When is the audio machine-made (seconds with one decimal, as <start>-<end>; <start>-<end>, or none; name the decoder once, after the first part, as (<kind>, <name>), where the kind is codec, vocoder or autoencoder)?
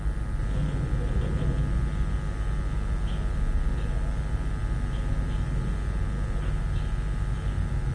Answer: none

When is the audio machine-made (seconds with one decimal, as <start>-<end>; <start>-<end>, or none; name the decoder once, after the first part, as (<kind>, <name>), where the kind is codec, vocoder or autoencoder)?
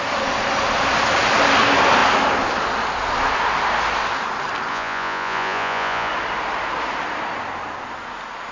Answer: 4.7-6.1 (vocoder, Vocos)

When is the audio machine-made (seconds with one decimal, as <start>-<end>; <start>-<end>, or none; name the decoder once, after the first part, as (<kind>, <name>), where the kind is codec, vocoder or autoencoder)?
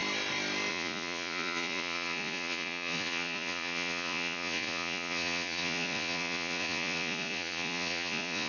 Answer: 0.7-8.5 (vocoder, Vocos)